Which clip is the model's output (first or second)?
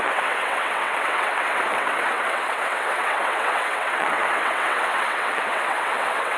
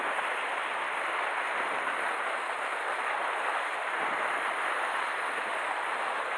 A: first